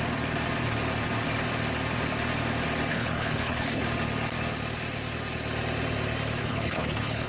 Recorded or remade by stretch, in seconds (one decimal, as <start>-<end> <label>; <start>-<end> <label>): 0.0-2.9 recorded; 2.9-3.8 remade; 3.8-6.4 recorded; 6.4-7.3 remade